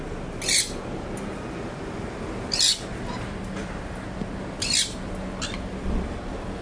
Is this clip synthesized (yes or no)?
no